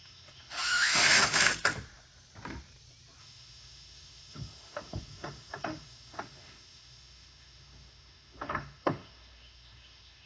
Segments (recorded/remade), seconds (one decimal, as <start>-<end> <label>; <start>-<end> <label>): 0.0-1.5 remade; 1.5-3.2 recorded; 3.2-10.3 remade